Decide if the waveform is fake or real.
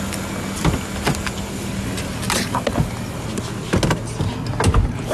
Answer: real